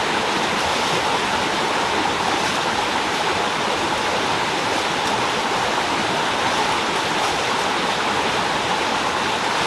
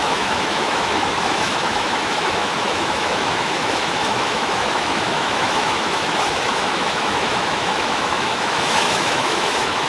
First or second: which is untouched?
first